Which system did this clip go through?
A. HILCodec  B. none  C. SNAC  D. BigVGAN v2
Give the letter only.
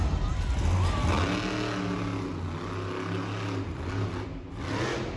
B